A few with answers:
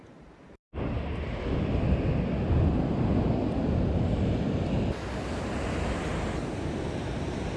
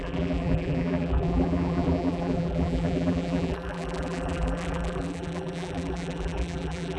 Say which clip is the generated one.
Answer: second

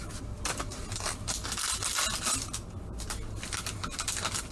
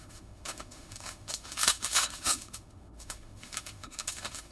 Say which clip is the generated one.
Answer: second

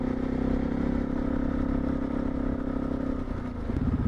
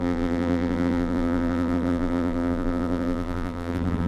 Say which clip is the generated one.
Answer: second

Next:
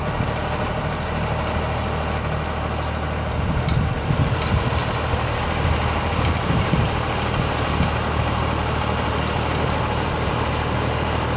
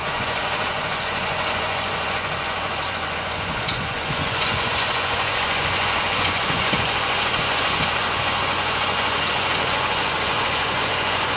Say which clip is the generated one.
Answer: second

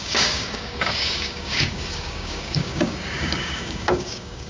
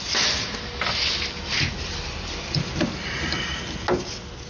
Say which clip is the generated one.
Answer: first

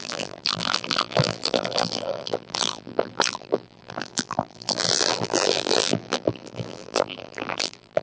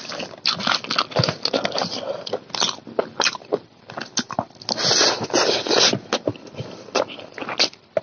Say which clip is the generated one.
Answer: first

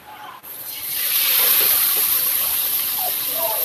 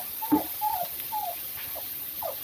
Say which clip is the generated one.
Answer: first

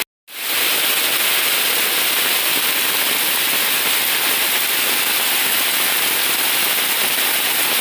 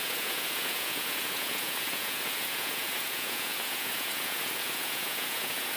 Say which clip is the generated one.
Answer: second